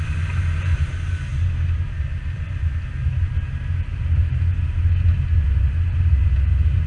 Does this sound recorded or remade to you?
recorded